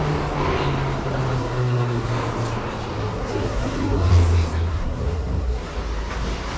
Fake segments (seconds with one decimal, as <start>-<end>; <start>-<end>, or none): 1.4-2.1; 3.0-4.1; 4.7-5.7